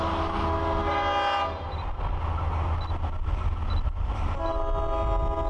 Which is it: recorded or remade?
recorded